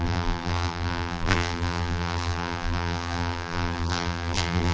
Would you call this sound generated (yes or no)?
yes